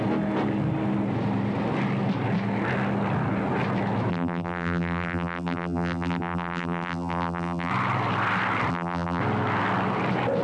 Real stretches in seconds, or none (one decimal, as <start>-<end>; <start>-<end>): 0.0-4.1; 7.7-8.7; 9.2-10.4